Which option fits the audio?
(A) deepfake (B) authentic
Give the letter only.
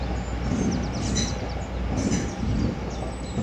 B